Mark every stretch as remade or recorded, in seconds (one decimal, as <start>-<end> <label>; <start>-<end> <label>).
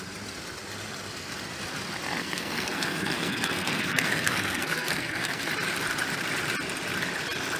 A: 0.0-2.2 recorded; 2.2-5.5 remade; 5.5-7.6 recorded